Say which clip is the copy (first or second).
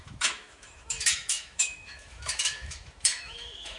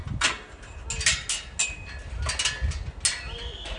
first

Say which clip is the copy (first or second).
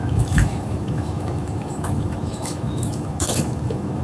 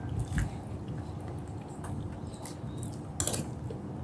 first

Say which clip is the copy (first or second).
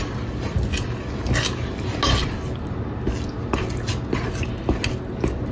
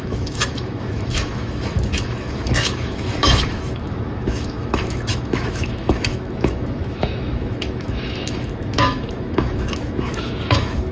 second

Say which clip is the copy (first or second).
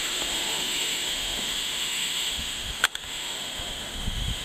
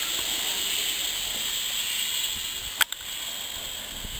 first